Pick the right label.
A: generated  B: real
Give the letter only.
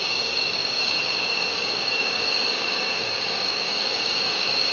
A